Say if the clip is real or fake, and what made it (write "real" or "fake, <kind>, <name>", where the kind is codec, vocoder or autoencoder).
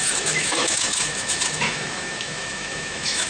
fake, autoencoder, DAC-VAE